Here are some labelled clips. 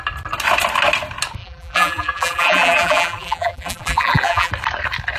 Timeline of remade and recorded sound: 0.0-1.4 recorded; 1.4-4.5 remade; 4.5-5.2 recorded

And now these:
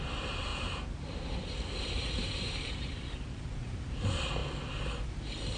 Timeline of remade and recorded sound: 0.0-0.5 recorded; 0.5-3.9 remade; 3.9-5.6 recorded